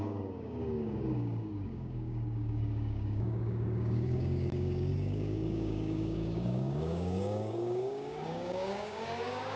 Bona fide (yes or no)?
no